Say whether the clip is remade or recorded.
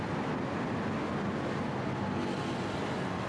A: recorded